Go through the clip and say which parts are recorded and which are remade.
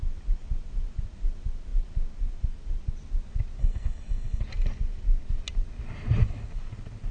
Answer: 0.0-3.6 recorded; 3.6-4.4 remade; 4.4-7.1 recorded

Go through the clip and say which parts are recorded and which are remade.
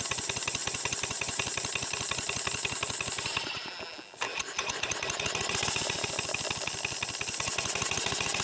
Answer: 0.0-8.4 recorded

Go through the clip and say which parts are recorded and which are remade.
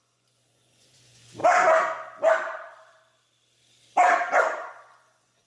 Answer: 0.0-1.4 remade; 1.4-4.7 recorded; 4.7-5.5 remade